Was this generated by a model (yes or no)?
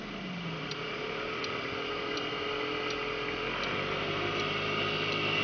no